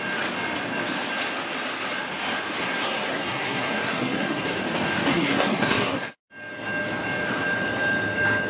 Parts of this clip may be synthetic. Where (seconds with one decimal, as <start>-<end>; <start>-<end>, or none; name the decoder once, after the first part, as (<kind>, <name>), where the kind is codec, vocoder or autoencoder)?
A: 2.6-4.6 (codec, SNAC); 5.1-6.1